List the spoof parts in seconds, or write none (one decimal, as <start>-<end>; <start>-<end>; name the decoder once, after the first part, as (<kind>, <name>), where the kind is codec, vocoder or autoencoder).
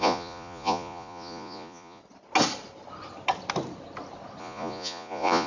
0.0-2.0 (vocoder, Vocos); 4.4-5.5